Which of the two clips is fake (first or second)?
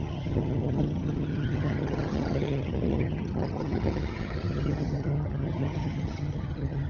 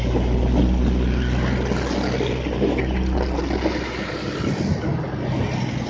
first